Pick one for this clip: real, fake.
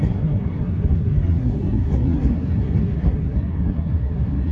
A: fake